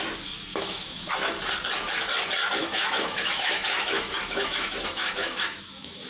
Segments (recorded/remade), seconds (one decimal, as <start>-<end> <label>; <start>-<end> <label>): 0.0-0.5 recorded; 0.5-1.1 remade; 1.1-2.6 recorded; 2.6-6.1 remade